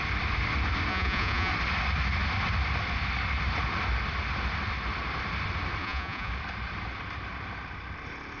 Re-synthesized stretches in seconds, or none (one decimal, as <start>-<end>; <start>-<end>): 0.9-1.5; 5.8-6.3